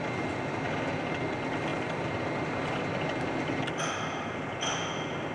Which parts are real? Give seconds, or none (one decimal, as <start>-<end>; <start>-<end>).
0.0-5.3